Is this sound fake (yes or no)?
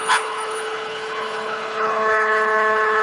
yes